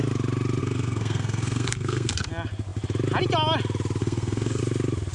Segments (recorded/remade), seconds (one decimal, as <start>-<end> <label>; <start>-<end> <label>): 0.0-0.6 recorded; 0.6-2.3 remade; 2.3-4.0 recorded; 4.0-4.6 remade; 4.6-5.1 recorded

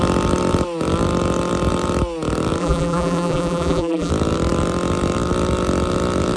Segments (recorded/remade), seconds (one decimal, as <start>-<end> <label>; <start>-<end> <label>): 0.0-2.6 recorded; 2.6-4.1 remade; 4.1-6.4 recorded

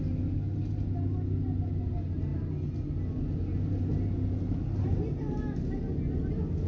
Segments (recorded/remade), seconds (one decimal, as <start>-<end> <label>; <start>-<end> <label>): 0.0-6.7 recorded

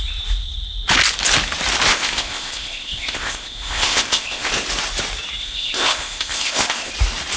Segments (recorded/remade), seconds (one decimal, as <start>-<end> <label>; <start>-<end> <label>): 0.0-1.9 recorded; 1.9-4.5 remade; 4.5-5.4 recorded; 5.4-6.9 remade; 6.9-7.4 recorded

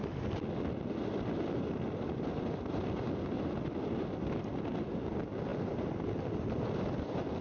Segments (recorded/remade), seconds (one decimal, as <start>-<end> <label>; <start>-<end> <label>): 0.0-7.4 recorded

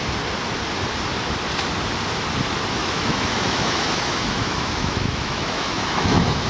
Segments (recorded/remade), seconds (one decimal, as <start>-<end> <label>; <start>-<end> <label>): 0.0-2.8 recorded; 2.8-6.5 remade

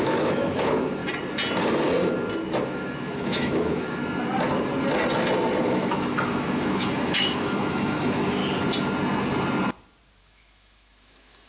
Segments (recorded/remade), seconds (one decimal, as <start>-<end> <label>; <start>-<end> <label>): 0.0-1.0 remade; 1.0-2.6 recorded; 2.6-4.0 remade; 4.0-5.6 recorded; 5.6-8.4 remade; 8.4-10.2 recorded; 10.2-11.5 remade

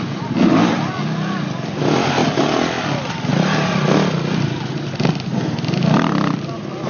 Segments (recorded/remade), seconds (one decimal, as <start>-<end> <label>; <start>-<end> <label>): 0.0-6.9 recorded